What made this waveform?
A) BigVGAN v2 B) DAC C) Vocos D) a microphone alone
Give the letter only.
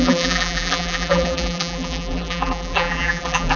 A